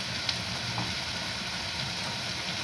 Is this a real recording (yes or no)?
yes